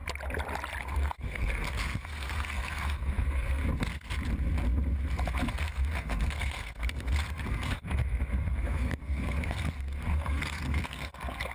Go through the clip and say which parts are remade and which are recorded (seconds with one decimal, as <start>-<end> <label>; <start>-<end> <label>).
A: 0.0-0.8 recorded; 0.8-3.6 remade; 3.6-5.5 recorded; 5.5-11.5 remade